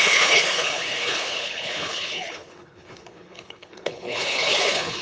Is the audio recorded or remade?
remade